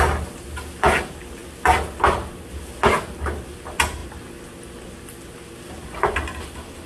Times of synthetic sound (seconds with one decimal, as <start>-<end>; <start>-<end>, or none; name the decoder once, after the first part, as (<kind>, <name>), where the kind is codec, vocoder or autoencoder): none